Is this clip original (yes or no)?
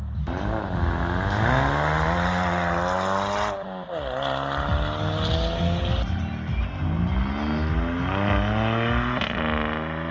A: yes